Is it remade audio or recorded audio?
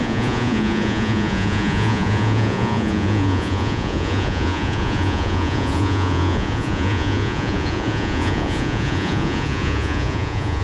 remade